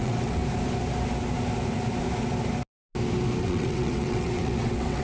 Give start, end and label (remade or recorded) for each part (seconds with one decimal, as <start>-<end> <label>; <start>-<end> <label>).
0.0-0.4 remade; 0.4-3.4 recorded; 3.4-5.0 remade